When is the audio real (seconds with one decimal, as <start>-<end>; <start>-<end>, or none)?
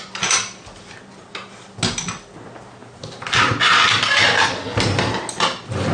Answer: 0.0-5.9